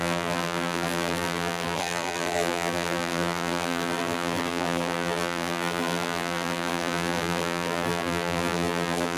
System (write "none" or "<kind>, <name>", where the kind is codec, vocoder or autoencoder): vocoder, BigVGAN v2